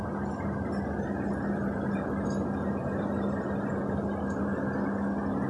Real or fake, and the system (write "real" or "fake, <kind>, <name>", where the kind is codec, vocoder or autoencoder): real